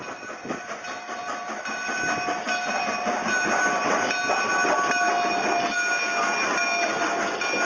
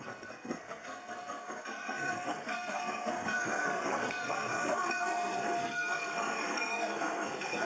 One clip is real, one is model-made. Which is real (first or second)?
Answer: first